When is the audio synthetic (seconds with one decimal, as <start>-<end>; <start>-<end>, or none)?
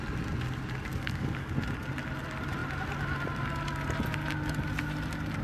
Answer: 0.9-1.5